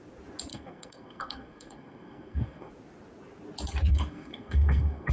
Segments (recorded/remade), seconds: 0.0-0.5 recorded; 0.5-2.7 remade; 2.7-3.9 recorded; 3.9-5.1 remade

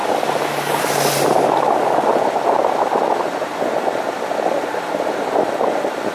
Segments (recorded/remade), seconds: 0.0-6.1 recorded